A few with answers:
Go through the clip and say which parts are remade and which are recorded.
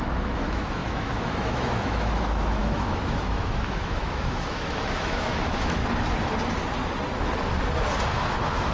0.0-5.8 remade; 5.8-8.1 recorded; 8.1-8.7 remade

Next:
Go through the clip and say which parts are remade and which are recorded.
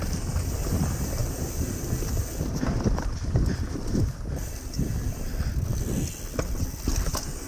0.0-7.5 recorded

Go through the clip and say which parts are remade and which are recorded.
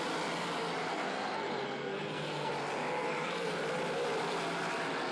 0.0-0.9 recorded; 0.9-2.5 remade; 2.5-3.0 recorded; 3.0-3.5 remade; 3.5-5.1 recorded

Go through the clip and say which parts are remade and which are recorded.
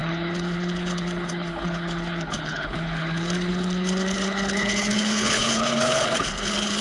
0.0-6.8 remade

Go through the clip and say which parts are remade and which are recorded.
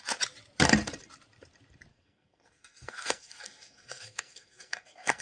0.0-1.9 recorded; 1.9-5.2 remade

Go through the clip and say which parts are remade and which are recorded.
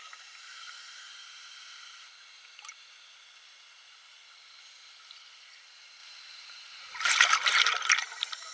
0.0-6.0 recorded; 6.0-7.1 remade; 7.1-8.5 recorded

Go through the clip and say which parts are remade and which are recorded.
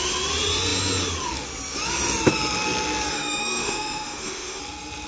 0.0-3.1 recorded; 3.1-4.6 remade; 4.6-5.1 recorded